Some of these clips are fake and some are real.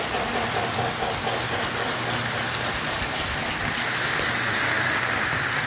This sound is real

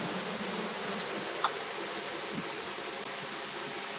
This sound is real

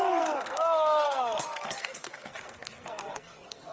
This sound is fake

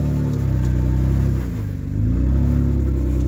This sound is real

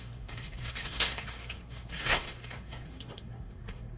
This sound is fake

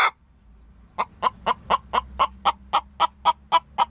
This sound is real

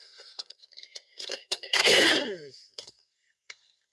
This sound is fake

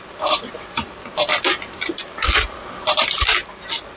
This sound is real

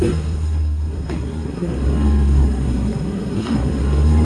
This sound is fake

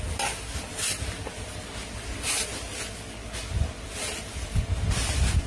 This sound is real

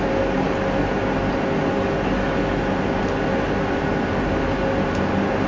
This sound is real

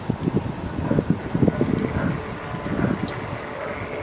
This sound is real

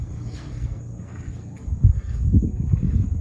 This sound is fake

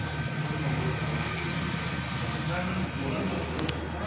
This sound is real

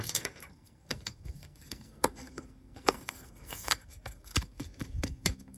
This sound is fake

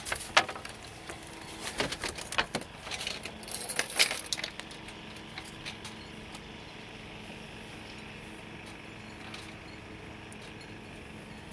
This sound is real